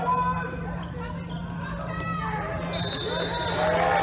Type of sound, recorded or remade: recorded